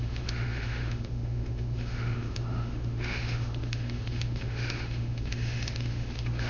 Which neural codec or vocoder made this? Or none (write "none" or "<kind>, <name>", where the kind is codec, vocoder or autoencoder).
autoencoder, DAC-VAE